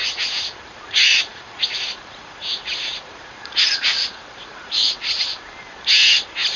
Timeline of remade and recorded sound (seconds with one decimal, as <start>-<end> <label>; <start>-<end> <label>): 0.0-0.6 recorded; 0.6-5.3 remade; 5.3-6.6 recorded